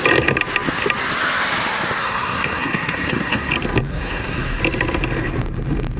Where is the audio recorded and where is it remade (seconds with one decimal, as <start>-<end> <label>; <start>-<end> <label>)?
0.0-2.0 recorded; 2.0-3.5 remade; 3.5-3.9 recorded; 3.9-4.6 remade; 4.6-6.0 recorded